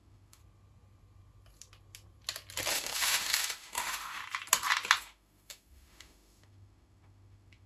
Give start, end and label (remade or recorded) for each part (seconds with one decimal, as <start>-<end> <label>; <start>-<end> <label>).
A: 0.0-0.4 remade; 0.4-2.7 recorded; 2.7-4.2 remade; 4.2-5.0 recorded; 5.0-7.7 remade